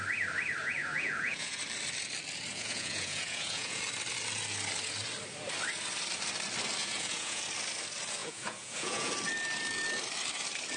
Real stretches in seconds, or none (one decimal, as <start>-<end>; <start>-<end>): 0.0-0.6; 1.6-2.5; 3.8-6.8; 7.4-8.2; 9.1-10.8

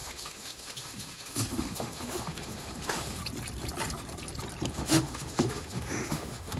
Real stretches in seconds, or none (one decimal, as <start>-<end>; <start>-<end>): 3.2-4.7